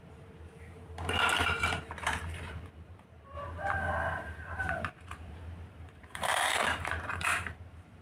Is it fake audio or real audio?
fake